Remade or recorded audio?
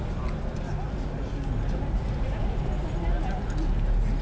recorded